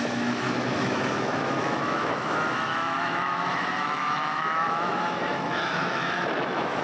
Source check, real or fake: fake